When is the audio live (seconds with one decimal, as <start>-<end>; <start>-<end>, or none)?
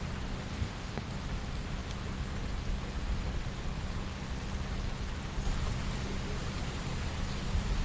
0.0-0.5; 1.1-7.8